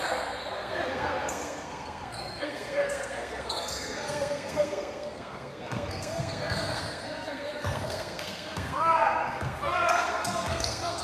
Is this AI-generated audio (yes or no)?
yes